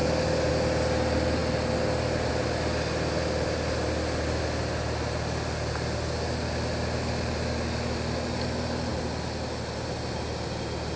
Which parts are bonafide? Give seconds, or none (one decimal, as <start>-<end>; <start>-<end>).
0.0-11.0